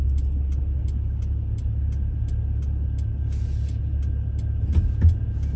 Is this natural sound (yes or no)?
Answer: yes